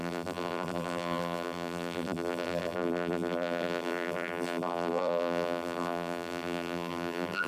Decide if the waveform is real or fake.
fake